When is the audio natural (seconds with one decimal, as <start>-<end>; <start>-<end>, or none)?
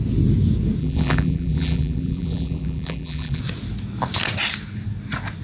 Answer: 0.0-0.8; 3.4-5.4